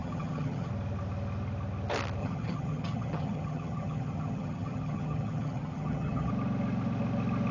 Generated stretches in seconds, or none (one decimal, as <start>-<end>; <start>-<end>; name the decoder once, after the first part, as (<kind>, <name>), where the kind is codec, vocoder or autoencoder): 0.0-0.7 (vocoder, HiFi-GAN); 2.2-6.3

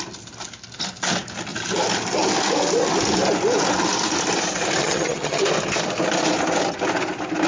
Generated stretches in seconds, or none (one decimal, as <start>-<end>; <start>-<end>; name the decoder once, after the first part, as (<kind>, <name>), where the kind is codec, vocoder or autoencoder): 4.8-5.4 (vocoder, HiFi-GAN)

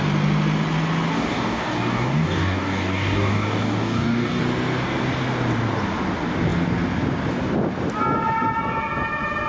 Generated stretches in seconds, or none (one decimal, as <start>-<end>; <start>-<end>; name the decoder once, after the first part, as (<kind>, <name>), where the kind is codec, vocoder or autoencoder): 1.1-4.4 (codec, DAC)

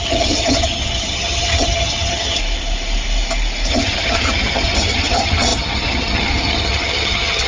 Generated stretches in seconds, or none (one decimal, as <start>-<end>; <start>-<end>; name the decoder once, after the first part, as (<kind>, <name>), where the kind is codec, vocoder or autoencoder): 0.0-2.4 (vocoder, HiFi-GAN); 3.7-7.5

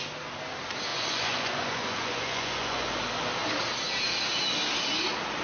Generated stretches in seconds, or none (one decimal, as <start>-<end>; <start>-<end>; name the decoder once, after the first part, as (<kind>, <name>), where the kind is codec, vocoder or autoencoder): 0.9-2.9 (vocoder, Vocos)

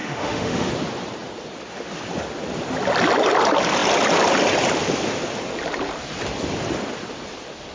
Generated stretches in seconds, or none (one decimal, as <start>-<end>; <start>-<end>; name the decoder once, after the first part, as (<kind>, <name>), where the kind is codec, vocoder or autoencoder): 0.0-0.7 (autoencoder, DAC-VAE)

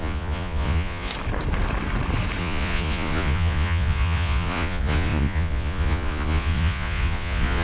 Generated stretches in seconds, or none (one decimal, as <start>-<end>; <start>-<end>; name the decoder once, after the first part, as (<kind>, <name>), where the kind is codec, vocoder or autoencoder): 0.0-1.1 (vocoder, Vocos); 2.4-7.6

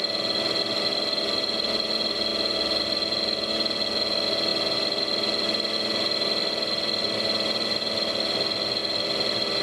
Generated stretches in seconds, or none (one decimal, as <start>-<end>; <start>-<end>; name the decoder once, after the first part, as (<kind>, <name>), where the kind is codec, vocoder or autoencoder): none